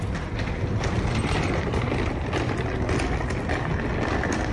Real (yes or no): yes